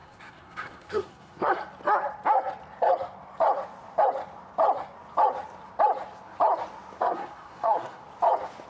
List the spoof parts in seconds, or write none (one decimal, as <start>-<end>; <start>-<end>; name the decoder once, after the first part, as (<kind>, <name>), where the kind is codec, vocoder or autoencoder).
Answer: 0.0-1.5 (codec, SNAC); 7.0-8.0